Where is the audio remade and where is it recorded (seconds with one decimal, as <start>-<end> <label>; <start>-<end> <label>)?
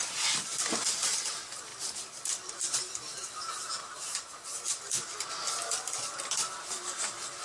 0.0-7.4 recorded